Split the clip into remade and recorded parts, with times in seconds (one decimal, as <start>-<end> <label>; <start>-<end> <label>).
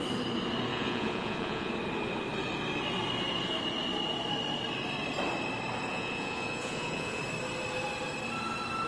0.0-0.7 recorded; 0.7-1.7 remade; 1.7-5.9 recorded; 5.9-7.2 remade; 7.2-8.9 recorded